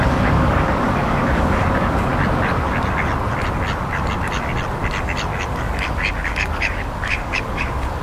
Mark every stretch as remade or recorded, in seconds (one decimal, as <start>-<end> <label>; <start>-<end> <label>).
0.0-2.1 remade; 2.1-5.9 recorded; 5.9-8.0 remade